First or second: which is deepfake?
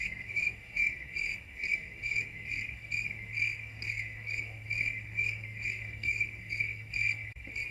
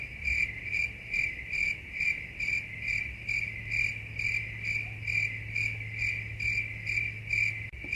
first